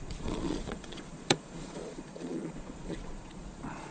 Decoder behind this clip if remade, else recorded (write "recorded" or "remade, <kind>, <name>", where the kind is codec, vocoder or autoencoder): remade, vocoder, Vocos